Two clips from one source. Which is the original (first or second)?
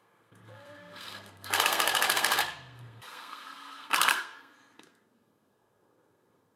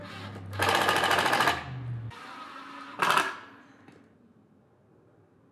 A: second